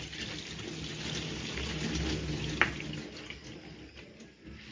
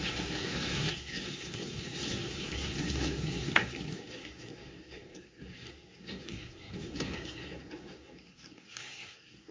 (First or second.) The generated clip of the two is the second